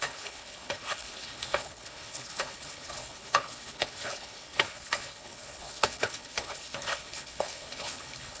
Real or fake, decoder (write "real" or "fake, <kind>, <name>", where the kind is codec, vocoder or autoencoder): fake, codec, HILCodec